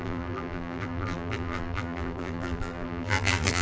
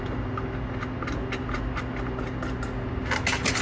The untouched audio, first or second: second